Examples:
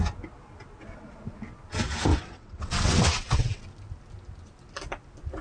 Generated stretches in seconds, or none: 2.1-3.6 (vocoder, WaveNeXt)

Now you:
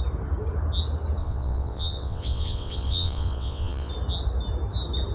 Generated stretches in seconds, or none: 1.2-3.9 (vocoder, WaveNeXt)

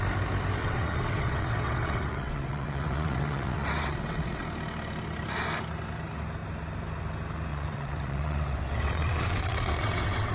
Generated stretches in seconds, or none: 0.6-4.4 (vocoder, WaveNeXt); 7.5-10.3

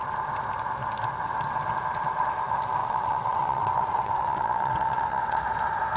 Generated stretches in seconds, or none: 2.8-5.4 (vocoder, WaveNeXt)

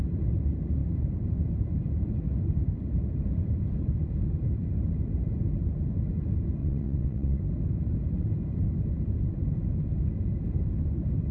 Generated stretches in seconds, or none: 6.6-7.4 (vocoder, WaveNeXt)